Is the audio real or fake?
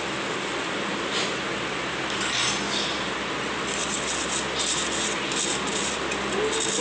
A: real